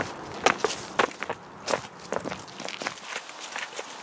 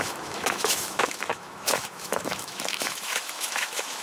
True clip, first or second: first